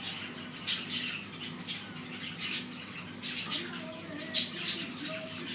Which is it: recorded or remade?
recorded